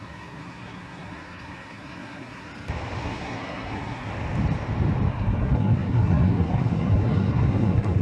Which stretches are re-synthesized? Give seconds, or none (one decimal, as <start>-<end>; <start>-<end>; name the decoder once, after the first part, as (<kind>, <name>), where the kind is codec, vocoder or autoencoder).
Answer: 0.0-2.5 (codec, SNAC); 3.0-4.1; 5.1-8.0